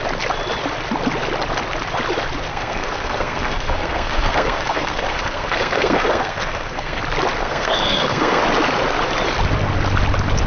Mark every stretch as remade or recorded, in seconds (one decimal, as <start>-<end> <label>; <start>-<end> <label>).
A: 0.0-2.5 recorded; 2.5-7.0 remade; 7.0-7.4 recorded; 7.4-8.4 remade; 8.4-10.5 recorded